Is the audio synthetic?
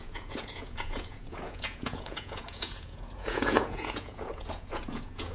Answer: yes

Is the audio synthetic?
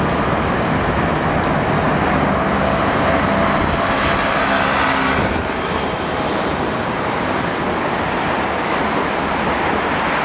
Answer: no